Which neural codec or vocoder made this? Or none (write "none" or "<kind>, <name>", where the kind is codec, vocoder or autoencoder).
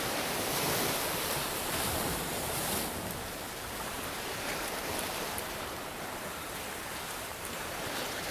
vocoder, BigVGAN v2